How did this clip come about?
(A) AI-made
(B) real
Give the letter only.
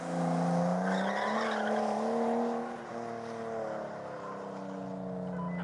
B